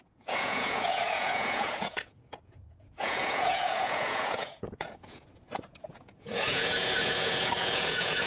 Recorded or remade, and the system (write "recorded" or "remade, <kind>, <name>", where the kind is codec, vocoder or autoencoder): remade, vocoder, Vocos